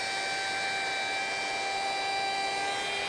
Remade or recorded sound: recorded